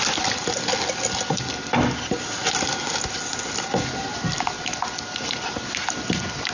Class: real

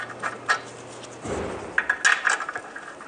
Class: real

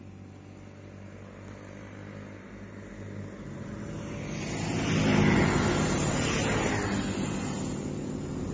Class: real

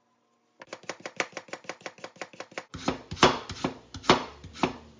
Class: real